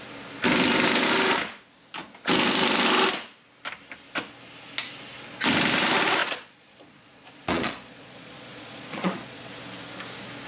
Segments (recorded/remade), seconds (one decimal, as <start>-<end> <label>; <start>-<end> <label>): 0.0-6.2 recorded; 6.2-9.5 remade; 9.5-10.5 recorded